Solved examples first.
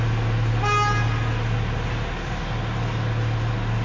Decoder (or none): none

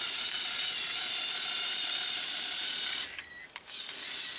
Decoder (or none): none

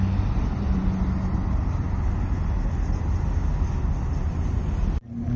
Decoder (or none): none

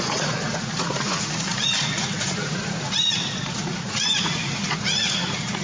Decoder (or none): vocoder, Vocos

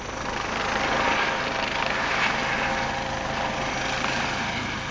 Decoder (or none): none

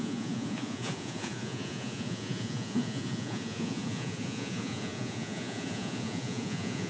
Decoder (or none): vocoder, Vocos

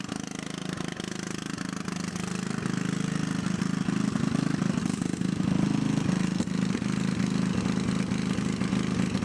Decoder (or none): none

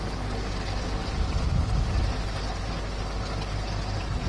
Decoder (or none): none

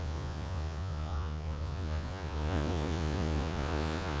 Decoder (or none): vocoder, Vocos